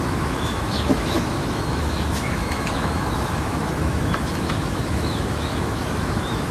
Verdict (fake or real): fake